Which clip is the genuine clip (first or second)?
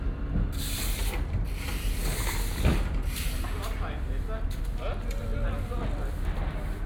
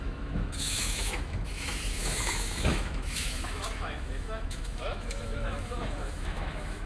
first